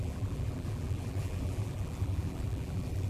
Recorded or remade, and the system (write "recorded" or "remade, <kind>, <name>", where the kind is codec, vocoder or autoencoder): remade, vocoder, BigVGAN v2